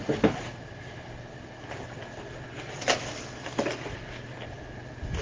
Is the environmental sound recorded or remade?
recorded